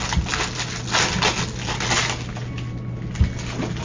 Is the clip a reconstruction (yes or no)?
no